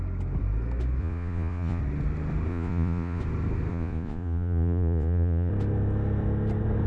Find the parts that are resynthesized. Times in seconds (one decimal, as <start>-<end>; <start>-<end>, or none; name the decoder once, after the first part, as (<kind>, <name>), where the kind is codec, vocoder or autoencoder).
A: 1.0-1.8 (vocoder, Vocos); 2.5-3.2; 3.7-5.5